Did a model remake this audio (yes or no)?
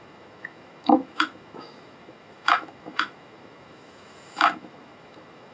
yes